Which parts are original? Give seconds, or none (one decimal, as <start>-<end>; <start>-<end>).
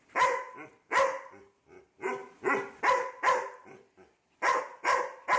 0.0-5.4